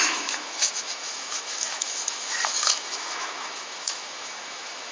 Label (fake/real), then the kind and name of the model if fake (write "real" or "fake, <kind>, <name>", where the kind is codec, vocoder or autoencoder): fake, autoencoder, DAC-VAE